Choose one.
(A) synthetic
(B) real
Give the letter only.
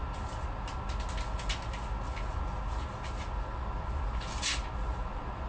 B